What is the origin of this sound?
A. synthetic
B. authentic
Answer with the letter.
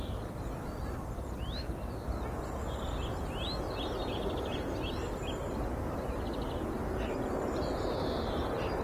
B